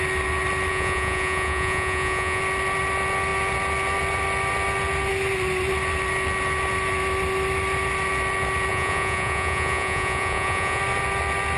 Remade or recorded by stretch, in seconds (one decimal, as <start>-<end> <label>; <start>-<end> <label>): 0.0-0.7 recorded; 0.7-2.4 remade; 2.4-8.7 recorded; 8.7-10.8 remade; 10.8-11.6 recorded